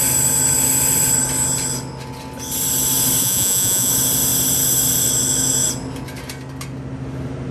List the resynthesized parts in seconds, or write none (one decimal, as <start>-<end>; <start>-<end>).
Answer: 3.2-3.9

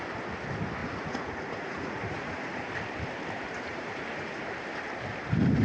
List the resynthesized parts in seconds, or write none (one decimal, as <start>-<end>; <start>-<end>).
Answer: 0.8-2.7; 3.7-4.5